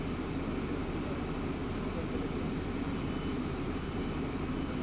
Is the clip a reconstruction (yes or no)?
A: no